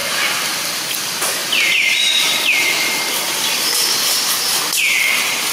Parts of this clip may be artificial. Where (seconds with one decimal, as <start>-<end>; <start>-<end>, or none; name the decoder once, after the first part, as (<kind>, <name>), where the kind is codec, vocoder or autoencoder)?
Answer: none